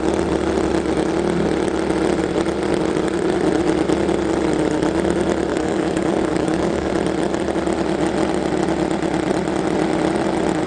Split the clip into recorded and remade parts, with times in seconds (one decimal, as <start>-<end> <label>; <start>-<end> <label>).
0.0-5.5 recorded; 5.5-6.9 remade; 6.9-10.7 recorded